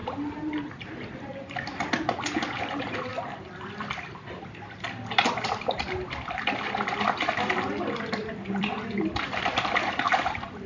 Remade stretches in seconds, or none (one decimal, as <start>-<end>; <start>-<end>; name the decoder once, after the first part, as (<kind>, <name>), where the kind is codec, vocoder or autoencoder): 1.1-10.7 (vocoder, BigVGAN v2)